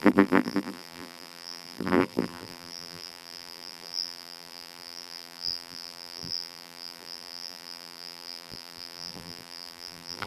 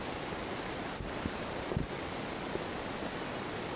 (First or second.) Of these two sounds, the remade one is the first